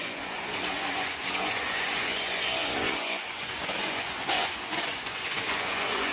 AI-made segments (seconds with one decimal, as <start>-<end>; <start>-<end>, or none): 0.0-6.1